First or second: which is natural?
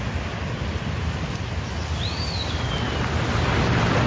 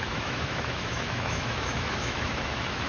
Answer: first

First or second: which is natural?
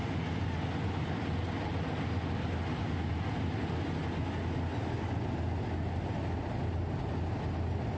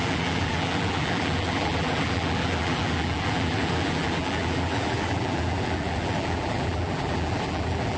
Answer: first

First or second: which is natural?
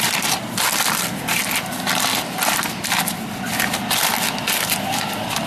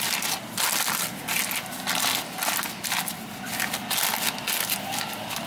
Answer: second